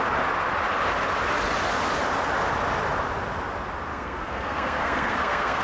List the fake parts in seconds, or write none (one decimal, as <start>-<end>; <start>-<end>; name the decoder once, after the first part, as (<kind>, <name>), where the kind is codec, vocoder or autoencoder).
3.9-5.6 (codec, SNAC)